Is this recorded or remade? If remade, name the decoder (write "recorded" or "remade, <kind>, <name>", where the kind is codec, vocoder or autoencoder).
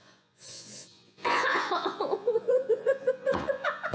remade, vocoder, Vocos